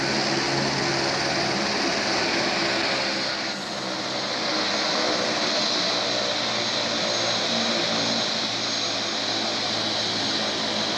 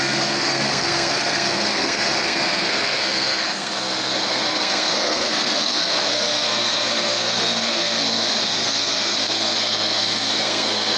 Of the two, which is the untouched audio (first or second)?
first